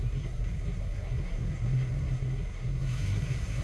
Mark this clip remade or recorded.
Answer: remade